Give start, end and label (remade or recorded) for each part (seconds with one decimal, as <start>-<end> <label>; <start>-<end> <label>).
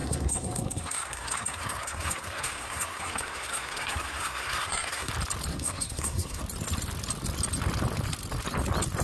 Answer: 0.0-5.1 remade; 5.1-5.5 recorded; 5.5-6.4 remade; 6.4-9.0 recorded